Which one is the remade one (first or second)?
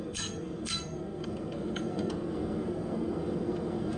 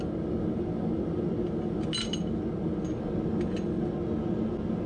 first